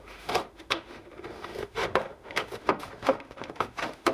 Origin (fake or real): fake